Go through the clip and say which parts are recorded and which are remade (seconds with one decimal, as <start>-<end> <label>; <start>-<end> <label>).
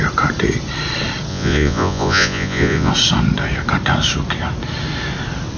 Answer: 0.0-1.3 recorded; 1.3-2.9 remade; 2.9-5.6 recorded